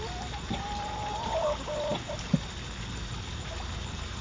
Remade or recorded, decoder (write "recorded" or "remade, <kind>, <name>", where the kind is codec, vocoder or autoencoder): recorded